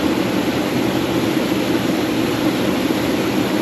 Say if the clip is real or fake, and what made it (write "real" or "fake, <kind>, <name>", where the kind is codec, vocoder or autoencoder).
real